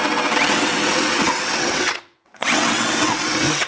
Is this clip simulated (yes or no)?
yes